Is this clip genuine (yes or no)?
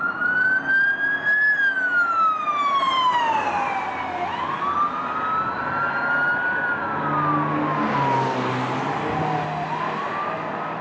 yes